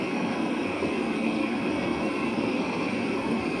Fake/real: fake